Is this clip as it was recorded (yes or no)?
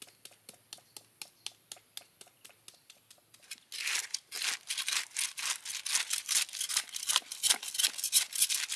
yes